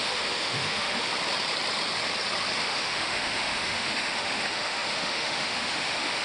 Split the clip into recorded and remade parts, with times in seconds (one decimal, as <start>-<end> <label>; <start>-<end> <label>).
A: 0.0-1.1 remade; 1.1-2.6 recorded; 2.6-6.2 remade